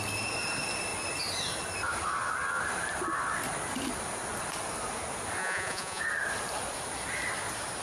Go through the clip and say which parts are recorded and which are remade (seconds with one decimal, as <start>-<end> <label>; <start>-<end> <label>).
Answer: 0.0-5.4 recorded; 5.4-6.0 remade; 6.0-7.8 recorded